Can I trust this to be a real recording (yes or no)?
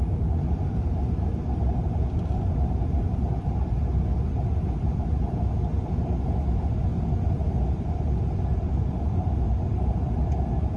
no